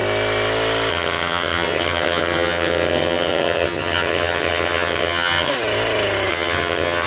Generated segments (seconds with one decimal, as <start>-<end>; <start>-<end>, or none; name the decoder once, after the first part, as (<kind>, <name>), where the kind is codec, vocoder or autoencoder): 0.9-5.5 (vocoder, HiFi-GAN); 6.3-7.1